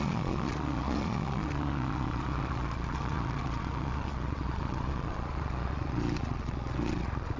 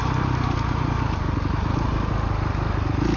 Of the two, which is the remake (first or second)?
first